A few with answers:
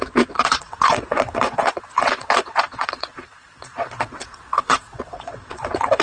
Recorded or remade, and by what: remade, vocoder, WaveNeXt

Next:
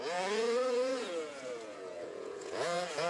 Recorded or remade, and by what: remade, vocoder, Vocos